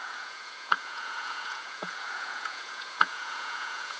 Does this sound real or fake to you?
fake